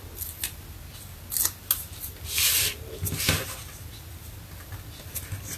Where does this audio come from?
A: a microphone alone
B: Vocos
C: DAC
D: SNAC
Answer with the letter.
A